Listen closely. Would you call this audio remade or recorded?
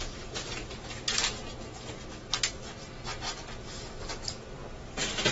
recorded